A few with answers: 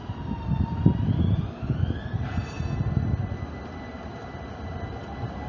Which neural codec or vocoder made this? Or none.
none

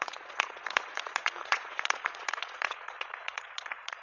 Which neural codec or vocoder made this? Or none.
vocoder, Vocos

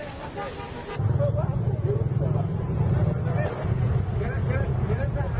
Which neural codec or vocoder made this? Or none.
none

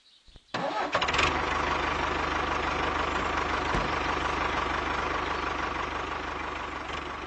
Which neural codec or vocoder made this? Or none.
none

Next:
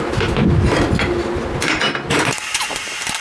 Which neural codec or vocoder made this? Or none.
none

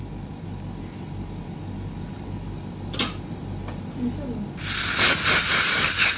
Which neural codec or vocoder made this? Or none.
none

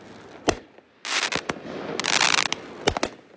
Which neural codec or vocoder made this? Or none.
none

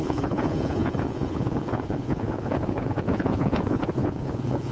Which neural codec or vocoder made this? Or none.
vocoder, Vocos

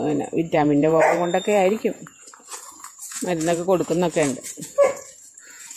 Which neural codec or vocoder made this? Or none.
vocoder, Vocos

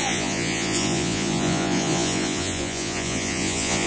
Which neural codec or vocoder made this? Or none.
vocoder, Vocos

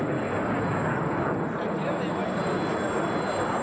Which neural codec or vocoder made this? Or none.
none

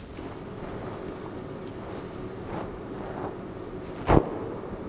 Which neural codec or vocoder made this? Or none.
none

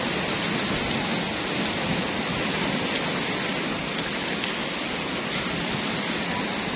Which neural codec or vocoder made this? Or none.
none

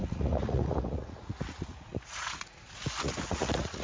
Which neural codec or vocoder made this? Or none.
vocoder, Vocos